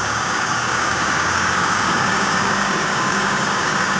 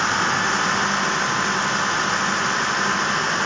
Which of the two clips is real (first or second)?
second